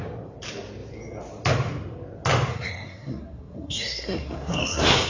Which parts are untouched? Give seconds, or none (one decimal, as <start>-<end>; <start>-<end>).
0.0-2.5